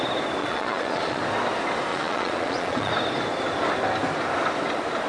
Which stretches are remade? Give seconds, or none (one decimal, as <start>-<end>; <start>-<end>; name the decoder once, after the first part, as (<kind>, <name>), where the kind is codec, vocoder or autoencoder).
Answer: 0.4-1.2 (vocoder, Vocos); 1.9-2.9